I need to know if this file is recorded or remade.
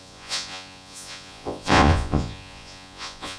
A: remade